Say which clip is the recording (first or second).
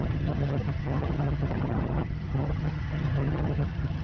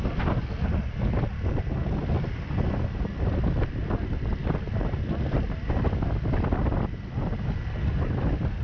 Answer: second